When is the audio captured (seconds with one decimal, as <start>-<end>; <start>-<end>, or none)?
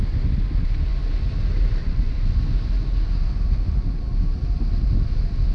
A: 0.0-1.8; 2.4-5.5